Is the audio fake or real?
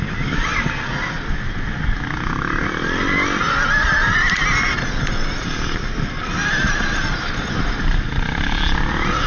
real